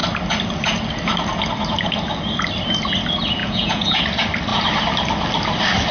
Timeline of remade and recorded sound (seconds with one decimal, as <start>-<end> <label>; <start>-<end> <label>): 0.0-3.4 recorded; 3.4-4.0 remade; 4.0-5.9 recorded

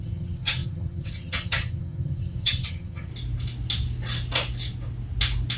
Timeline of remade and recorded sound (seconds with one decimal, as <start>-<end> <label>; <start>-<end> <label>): 0.0-3.1 remade; 3.1-5.6 recorded